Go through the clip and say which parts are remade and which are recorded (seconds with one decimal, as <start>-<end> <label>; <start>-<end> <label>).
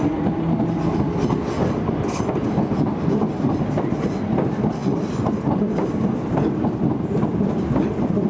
0.0-8.3 recorded